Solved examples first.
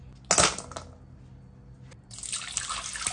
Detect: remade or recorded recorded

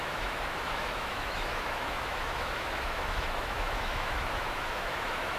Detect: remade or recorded remade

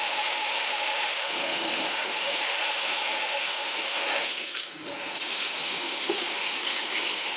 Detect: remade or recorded remade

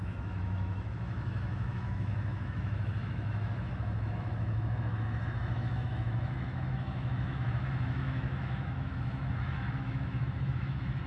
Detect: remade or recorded remade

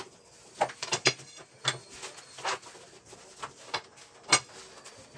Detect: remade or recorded recorded